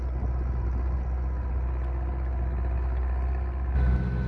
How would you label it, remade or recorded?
recorded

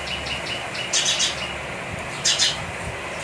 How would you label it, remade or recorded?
recorded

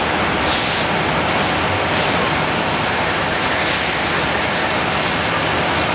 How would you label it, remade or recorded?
recorded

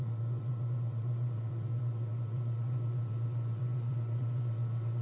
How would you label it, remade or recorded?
remade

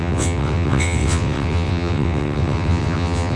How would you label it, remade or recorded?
remade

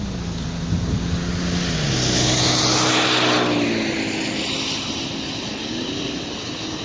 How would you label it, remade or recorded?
recorded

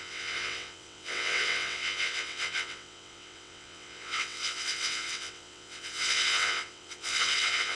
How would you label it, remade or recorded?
remade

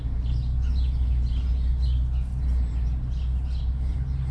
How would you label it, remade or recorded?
recorded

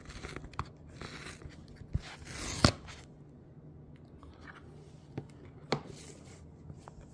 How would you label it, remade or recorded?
recorded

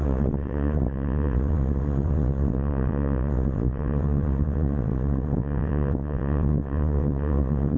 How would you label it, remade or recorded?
remade